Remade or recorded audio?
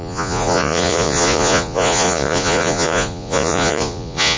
remade